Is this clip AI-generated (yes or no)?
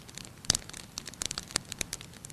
yes